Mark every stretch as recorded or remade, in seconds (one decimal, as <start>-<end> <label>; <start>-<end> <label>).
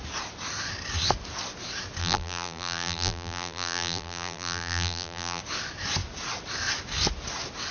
0.0-2.0 recorded; 2.0-5.4 remade; 5.4-7.7 recorded